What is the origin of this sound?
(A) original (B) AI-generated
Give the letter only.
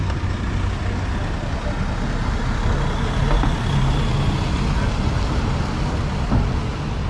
A